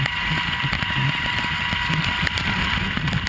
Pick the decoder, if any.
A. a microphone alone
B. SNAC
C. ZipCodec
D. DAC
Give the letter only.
A